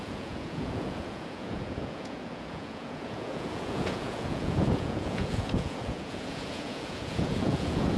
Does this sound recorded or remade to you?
remade